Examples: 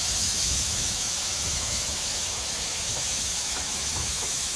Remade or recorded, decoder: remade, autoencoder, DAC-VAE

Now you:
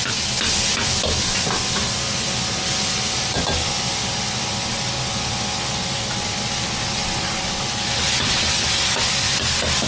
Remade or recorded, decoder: recorded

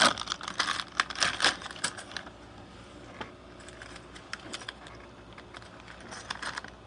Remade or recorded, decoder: recorded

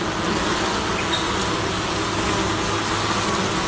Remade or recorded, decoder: recorded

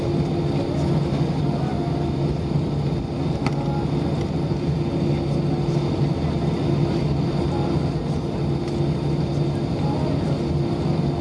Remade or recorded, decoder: recorded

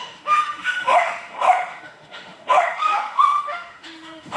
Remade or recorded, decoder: remade, autoencoder, DAC-VAE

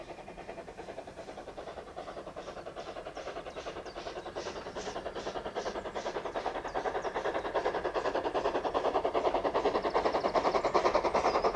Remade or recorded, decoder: recorded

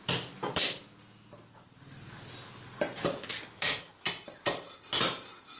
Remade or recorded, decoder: recorded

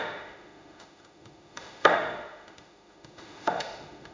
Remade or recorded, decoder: remade, autoencoder, DAC-VAE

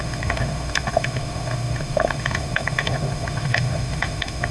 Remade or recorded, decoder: remade, autoencoder, DAC-VAE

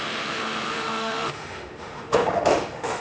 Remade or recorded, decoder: remade, autoencoder, DAC-VAE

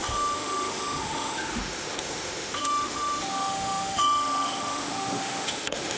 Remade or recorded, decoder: remade, autoencoder, DAC-VAE